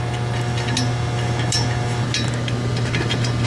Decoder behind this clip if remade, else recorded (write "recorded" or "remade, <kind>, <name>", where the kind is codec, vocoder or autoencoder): recorded